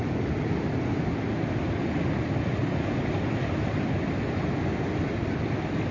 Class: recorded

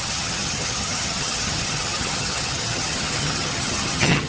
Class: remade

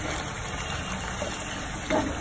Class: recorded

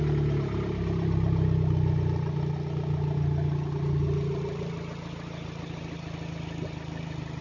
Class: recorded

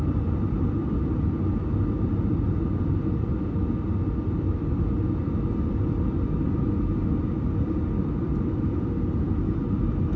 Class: recorded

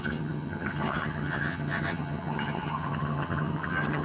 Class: remade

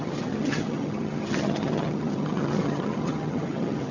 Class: remade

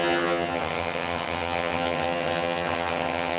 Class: remade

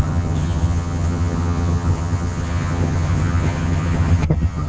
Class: remade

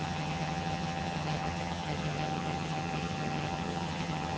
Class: remade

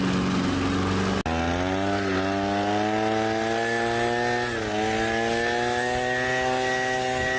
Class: recorded